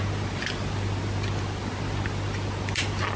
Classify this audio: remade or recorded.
recorded